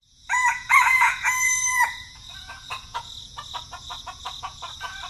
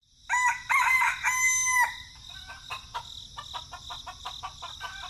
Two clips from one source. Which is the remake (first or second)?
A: first